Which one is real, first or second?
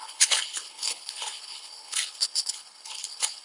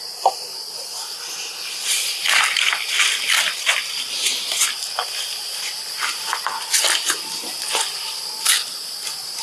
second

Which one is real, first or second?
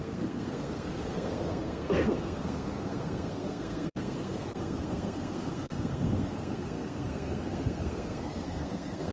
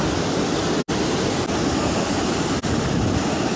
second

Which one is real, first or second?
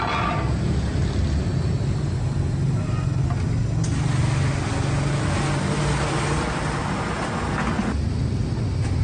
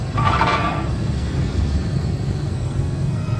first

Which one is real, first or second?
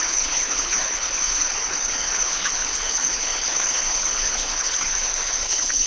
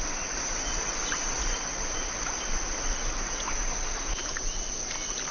second